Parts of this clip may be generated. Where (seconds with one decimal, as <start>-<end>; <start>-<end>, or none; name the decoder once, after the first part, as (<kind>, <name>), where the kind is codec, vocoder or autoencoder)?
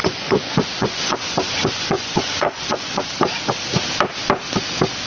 0.0-3.1 (vocoder, Vocos)